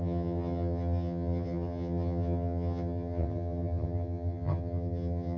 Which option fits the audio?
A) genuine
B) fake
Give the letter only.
B